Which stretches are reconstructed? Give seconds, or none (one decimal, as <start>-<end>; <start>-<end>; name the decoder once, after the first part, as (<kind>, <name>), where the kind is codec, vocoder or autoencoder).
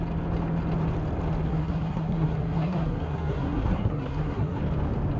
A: 1.5-4.6 (codec, SNAC)